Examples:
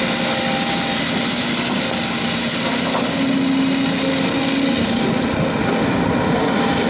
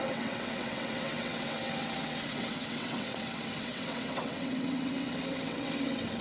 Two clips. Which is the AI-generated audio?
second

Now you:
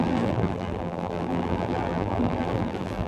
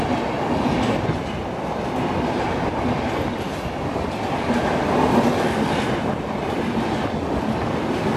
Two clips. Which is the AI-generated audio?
first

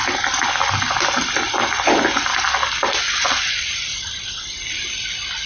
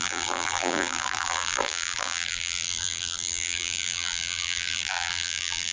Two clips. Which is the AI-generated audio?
second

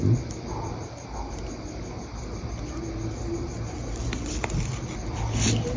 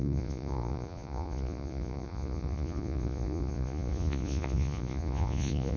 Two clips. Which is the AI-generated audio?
second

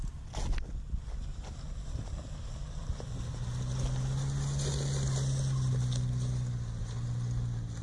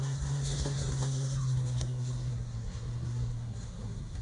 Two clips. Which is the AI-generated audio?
second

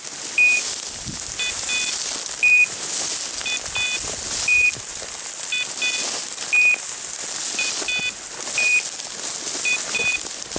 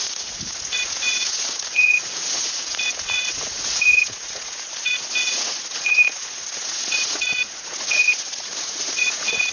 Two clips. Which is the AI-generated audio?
second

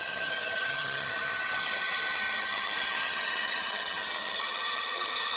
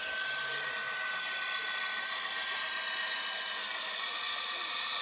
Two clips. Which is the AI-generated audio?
first